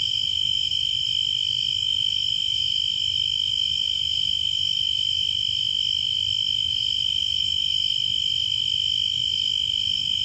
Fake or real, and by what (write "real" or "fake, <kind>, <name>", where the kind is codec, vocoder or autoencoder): real